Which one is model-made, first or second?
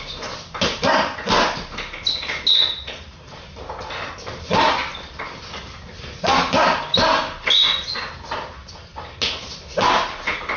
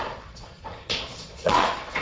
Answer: second